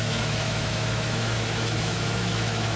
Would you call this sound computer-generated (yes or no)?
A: yes